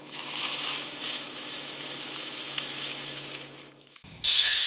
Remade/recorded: remade